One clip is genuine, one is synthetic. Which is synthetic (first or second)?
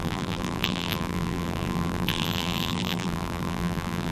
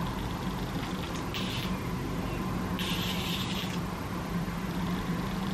first